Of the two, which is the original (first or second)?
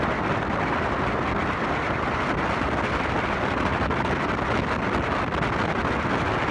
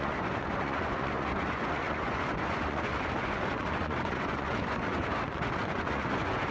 first